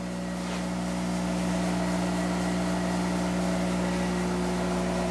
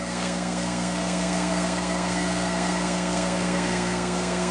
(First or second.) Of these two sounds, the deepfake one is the second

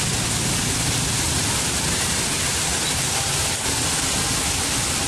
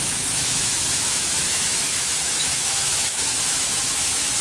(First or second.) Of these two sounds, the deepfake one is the second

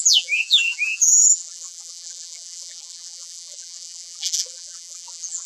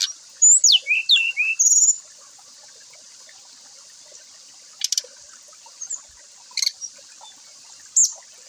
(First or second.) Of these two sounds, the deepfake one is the first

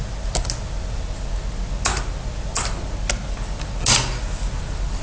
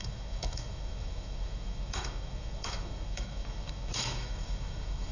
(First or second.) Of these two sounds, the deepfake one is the second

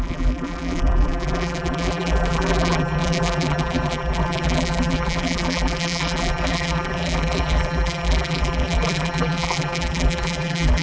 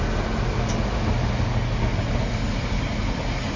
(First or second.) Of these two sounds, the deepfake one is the first